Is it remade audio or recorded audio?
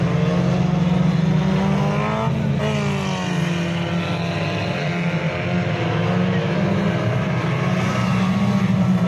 recorded